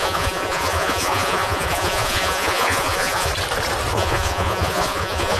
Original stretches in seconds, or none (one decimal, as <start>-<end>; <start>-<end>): 3.3-3.9